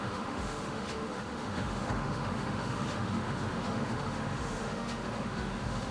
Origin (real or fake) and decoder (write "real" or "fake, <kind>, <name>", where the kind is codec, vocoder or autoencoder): fake, autoencoder, DAC-VAE